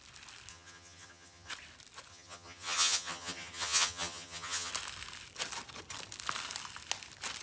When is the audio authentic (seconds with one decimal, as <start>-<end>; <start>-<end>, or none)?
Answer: 0.0-0.5; 1.5-2.1; 4.7-7.4

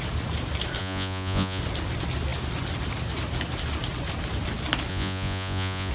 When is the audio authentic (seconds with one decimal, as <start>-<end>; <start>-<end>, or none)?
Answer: 0.0-0.8; 1.6-4.9

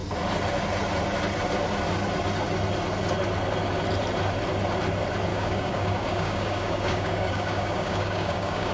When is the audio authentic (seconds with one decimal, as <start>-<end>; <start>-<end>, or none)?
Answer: 0.0-5.3

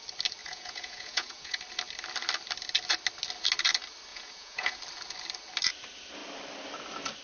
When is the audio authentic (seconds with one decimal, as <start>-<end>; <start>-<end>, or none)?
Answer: 0.0-0.4; 1.6-4.1; 4.8-7.2